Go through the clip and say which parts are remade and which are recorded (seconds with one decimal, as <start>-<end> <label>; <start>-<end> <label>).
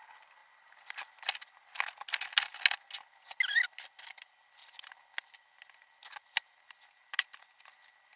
0.0-8.2 recorded